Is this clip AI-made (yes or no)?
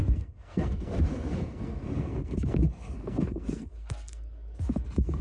yes